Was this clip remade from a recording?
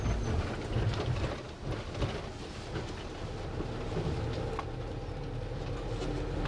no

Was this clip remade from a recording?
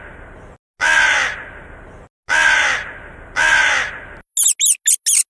no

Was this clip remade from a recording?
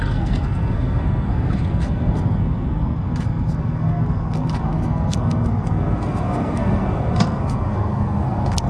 yes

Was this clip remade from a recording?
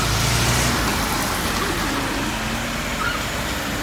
no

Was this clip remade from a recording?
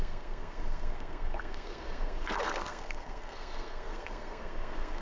yes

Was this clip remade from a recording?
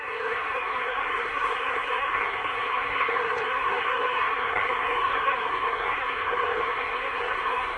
yes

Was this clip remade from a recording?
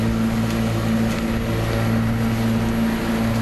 no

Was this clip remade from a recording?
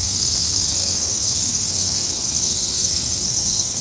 yes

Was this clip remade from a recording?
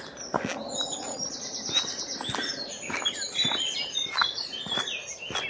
no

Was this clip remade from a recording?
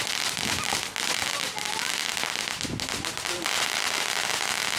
no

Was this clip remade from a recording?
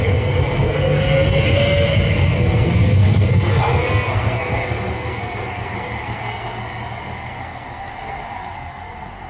yes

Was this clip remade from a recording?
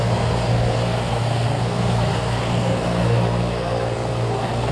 yes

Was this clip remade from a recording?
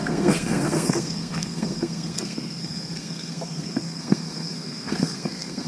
yes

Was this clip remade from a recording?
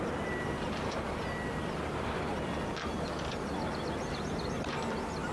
no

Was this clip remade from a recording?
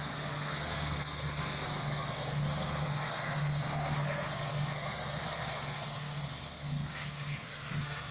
yes